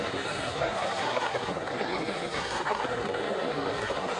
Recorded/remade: remade